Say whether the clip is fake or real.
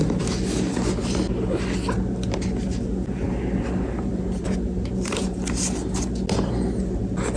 real